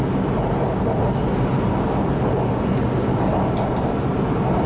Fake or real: real